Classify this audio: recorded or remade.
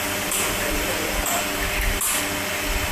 recorded